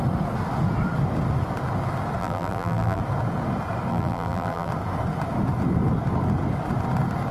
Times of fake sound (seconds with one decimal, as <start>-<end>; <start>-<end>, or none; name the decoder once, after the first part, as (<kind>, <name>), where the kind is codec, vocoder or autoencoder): 2.2-3.0 (vocoder, BigVGAN v2); 3.9-4.7